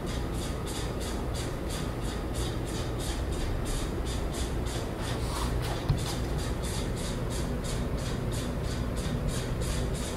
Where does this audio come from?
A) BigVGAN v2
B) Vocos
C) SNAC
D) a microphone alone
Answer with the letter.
D